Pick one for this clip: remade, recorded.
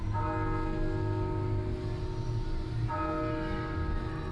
recorded